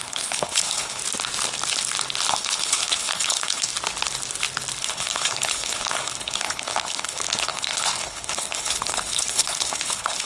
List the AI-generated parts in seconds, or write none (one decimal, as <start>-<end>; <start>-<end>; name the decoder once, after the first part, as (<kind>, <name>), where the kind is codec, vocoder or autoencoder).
0.0-1.0 (codec, HILCodec); 2.3-3.7; 4.8-10.3